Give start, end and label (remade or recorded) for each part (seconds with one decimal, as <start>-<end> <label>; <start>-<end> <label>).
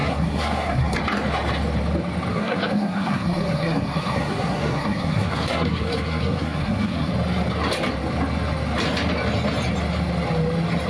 0.0-1.0 remade; 1.0-2.3 recorded; 2.3-7.1 remade; 7.1-10.9 recorded